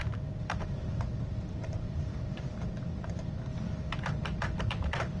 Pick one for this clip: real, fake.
fake